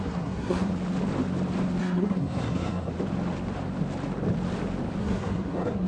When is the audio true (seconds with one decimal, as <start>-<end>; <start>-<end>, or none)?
0.7-1.8; 2.9-5.0